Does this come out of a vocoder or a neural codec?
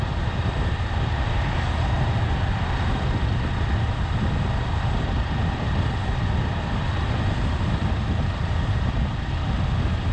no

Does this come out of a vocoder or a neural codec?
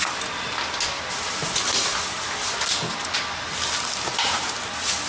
no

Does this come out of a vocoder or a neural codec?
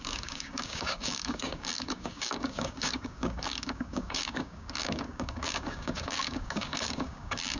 yes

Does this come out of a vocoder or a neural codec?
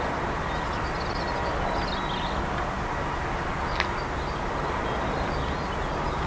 no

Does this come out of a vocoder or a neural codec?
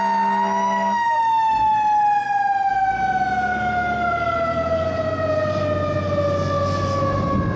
no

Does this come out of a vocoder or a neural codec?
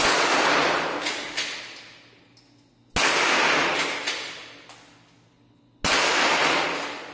no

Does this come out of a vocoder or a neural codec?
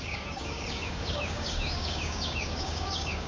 yes